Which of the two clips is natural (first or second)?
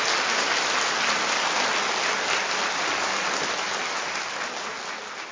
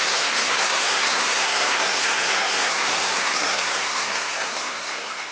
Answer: first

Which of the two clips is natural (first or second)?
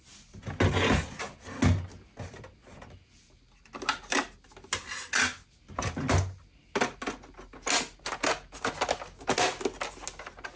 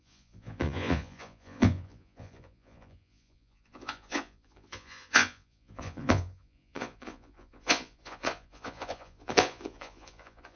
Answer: first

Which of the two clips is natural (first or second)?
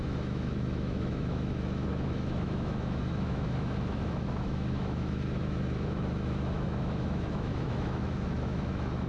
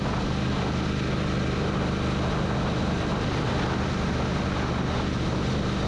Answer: second